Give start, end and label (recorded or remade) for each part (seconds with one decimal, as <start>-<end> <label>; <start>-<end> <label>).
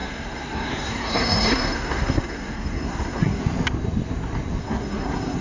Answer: 0.0-3.4 remade; 3.4-4.6 recorded; 4.6-5.4 remade